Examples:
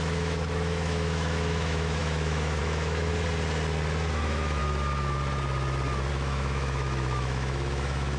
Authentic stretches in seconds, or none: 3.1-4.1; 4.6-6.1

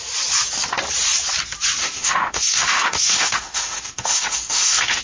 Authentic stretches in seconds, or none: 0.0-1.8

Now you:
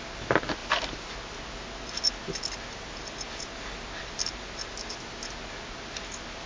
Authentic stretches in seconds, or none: 0.0-6.5

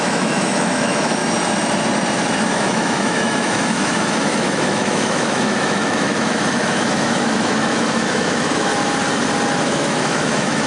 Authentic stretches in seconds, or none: 1.2-2.5; 8.7-9.6